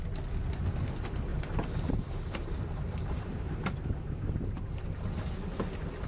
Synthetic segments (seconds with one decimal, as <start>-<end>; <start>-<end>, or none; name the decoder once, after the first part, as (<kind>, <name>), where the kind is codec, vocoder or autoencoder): 1.3-5.0 (vocoder, BigVGAN v2)